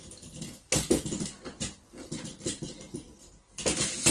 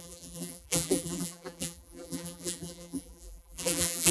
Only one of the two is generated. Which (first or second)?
second